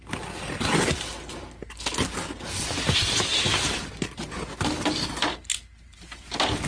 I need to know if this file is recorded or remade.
recorded